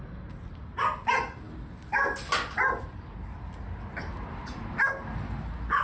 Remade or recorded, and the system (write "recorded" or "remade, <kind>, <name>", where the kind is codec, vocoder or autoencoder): recorded